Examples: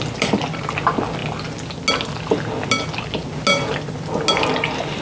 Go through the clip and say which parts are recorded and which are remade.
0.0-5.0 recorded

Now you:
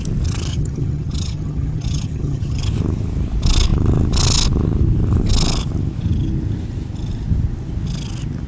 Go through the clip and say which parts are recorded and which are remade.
0.0-0.5 recorded; 0.5-2.6 remade; 2.6-8.5 recorded

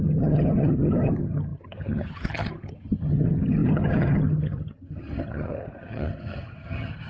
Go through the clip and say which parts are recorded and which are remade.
0.0-7.1 remade

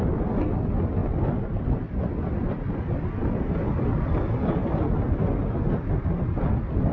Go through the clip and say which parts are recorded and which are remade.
0.0-6.9 recorded

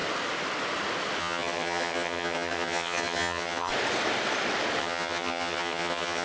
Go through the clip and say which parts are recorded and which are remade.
0.0-1.2 recorded; 1.2-3.7 remade; 3.7-4.8 recorded; 4.8-6.2 remade

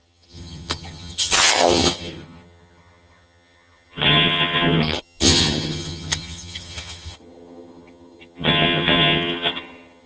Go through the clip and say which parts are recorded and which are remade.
0.0-10.1 remade

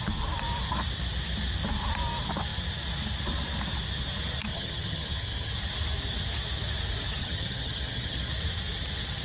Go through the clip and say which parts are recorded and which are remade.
0.0-4.5 recorded; 4.5-5.5 remade; 5.5-7.2 recorded; 7.2-8.3 remade; 8.3-9.2 recorded